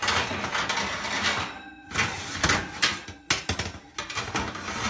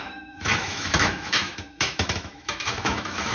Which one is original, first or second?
first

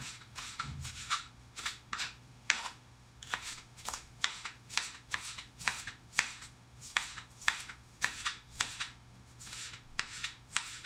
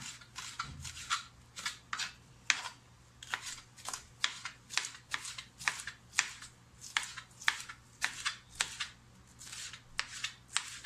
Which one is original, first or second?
second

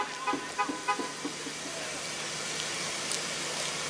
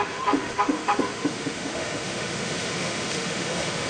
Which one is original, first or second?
first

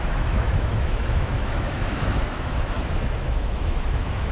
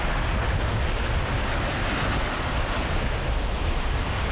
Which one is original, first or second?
second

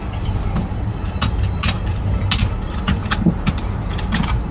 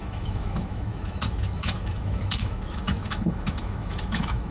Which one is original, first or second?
first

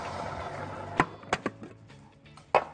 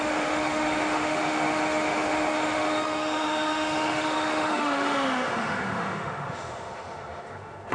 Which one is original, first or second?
first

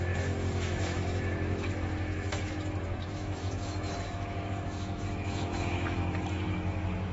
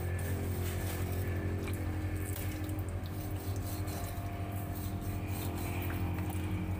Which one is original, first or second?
second